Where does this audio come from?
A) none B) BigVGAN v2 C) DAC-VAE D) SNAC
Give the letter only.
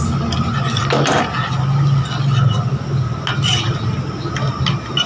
A